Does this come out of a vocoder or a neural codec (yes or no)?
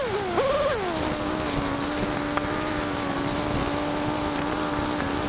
no